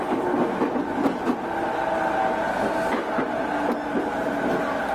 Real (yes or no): yes